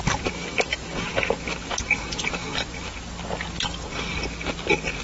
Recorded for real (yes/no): yes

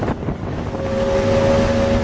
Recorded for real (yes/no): yes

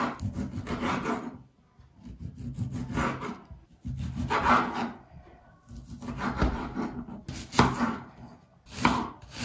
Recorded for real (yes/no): yes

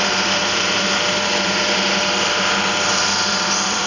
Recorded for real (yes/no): no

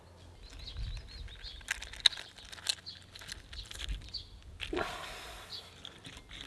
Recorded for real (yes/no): yes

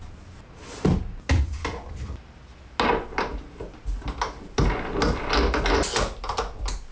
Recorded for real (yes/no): yes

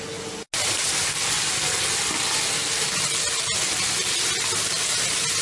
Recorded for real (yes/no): yes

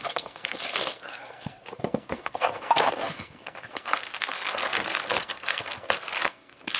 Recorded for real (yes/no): no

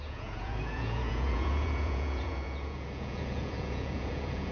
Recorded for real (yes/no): no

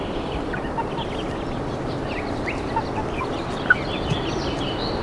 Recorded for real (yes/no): yes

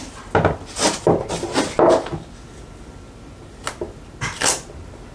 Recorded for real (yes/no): yes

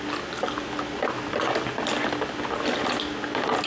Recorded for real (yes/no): yes